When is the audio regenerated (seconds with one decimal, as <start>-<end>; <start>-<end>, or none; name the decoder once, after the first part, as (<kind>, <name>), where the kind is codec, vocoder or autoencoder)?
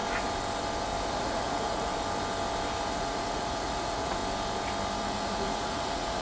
1.2-1.9 (vocoder, Vocos); 2.9-4.2; 5.0-6.2